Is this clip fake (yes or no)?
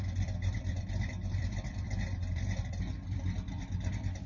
yes